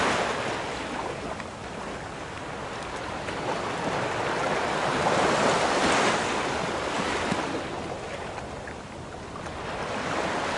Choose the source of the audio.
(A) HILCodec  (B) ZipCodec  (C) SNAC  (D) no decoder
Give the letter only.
D